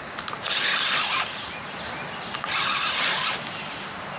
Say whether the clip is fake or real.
real